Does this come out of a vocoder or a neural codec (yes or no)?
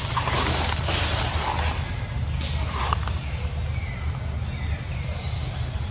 no